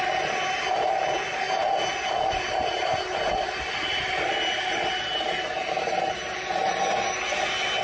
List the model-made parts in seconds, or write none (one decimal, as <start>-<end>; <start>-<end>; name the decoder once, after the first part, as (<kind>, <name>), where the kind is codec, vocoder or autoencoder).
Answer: none